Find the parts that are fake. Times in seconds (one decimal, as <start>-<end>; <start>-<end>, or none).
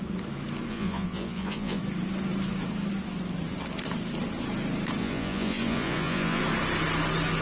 0.7-1.8; 5.0-6.4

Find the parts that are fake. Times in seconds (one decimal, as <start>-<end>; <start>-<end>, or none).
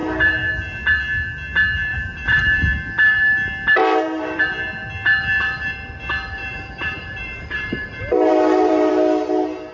0.0-0.5; 1.9-2.4; 3.8-4.4; 6.4-8.9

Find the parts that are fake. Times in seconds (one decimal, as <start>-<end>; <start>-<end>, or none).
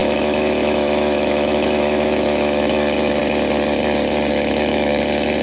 0.0-3.2; 4.3-5.0